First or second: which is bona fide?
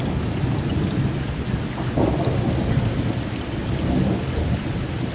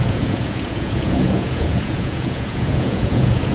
first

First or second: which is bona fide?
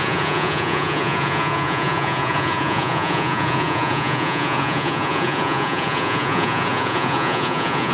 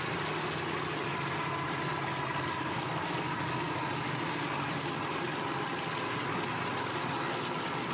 second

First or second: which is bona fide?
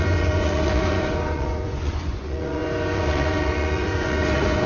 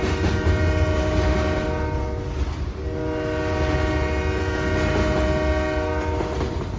second